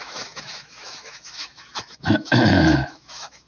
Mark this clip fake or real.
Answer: fake